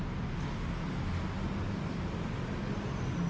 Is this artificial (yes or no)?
no